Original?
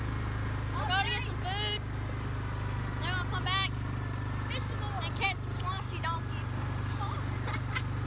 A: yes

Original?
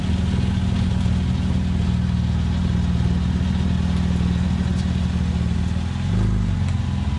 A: yes